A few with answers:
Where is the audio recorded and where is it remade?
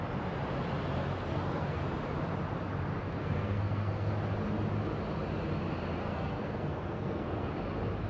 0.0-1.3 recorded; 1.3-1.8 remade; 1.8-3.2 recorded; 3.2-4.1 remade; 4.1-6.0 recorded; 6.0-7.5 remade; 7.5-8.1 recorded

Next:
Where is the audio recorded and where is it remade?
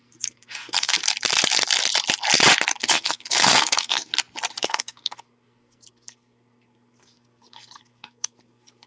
0.0-1.0 remade; 1.0-2.8 recorded; 2.8-4.1 remade; 4.1-4.6 recorded; 4.6-8.9 remade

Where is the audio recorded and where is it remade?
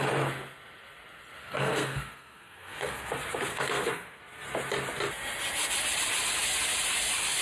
0.0-1.4 recorded; 1.4-3.1 remade; 3.1-3.5 recorded; 3.5-4.2 remade; 4.2-7.4 recorded